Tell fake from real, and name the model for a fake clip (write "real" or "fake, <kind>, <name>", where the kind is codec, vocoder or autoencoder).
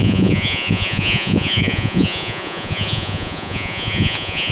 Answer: fake, vocoder, Vocos